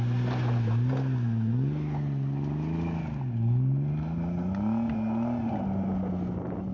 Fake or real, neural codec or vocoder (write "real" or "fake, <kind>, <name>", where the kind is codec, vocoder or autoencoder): real